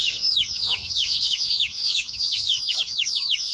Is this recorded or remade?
remade